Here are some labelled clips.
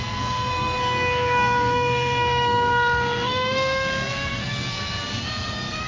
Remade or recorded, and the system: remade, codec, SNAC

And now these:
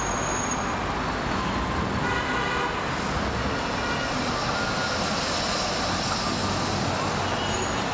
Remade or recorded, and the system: recorded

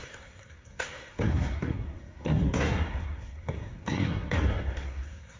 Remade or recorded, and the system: remade, codec, SNAC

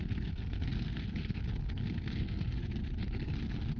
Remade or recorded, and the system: remade, codec, SNAC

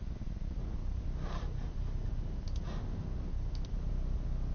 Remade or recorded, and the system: recorded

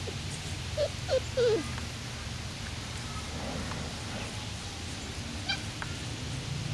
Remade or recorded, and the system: recorded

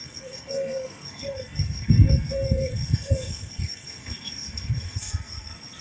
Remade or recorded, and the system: remade, codec, SNAC